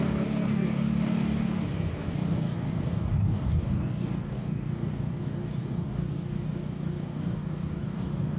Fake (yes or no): yes